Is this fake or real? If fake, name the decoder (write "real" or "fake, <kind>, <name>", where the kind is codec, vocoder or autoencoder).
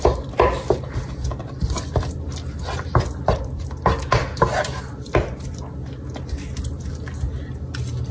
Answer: real